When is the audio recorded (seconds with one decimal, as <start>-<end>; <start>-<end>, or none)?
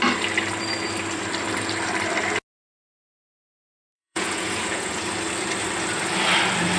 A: 0.0-2.7; 5.0-6.8